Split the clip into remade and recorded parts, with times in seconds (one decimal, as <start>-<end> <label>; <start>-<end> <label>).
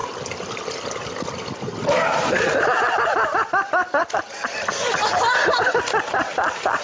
0.0-6.8 recorded